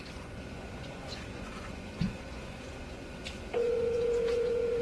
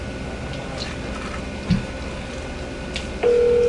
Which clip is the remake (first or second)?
first